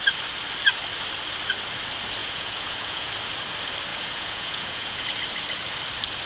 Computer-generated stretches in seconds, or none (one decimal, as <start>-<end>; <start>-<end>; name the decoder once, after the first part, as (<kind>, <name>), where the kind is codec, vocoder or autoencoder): 2.2-3.1 (vocoder, Vocos); 3.9-5.0